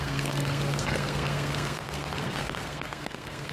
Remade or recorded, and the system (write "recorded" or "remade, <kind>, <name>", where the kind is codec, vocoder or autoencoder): remade, codec, SNAC